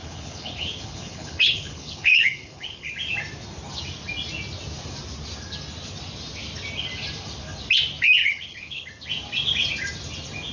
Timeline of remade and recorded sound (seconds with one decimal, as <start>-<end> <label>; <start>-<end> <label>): 0.0-2.9 remade; 2.9-8.2 recorded; 8.2-8.9 remade; 8.9-10.5 recorded